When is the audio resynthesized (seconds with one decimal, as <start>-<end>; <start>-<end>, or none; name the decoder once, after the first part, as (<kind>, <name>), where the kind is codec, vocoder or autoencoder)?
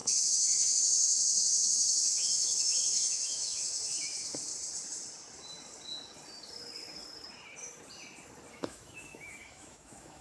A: 0.0-4.5 (autoencoder, DAC-VAE); 8.5-10.2